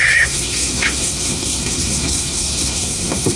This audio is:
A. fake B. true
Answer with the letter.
A